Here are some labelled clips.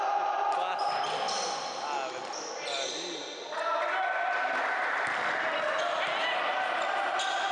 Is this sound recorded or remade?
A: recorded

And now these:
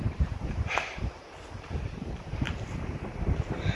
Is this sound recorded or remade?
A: remade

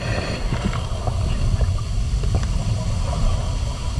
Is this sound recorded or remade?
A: recorded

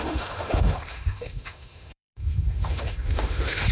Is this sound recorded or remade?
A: remade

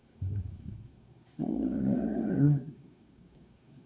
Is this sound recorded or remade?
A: remade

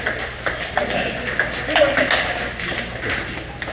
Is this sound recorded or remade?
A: recorded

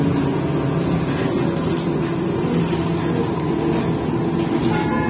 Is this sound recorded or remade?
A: recorded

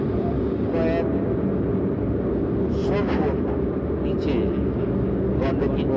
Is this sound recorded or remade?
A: recorded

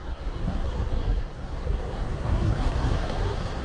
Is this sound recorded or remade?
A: remade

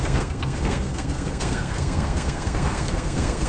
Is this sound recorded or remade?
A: remade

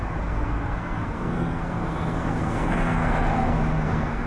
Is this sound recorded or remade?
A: remade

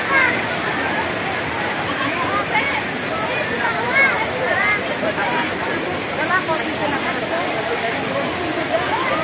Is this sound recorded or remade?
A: recorded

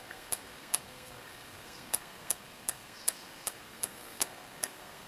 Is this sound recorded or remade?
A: remade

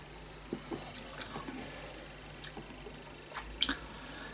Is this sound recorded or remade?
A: recorded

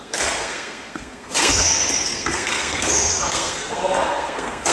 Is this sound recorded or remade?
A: remade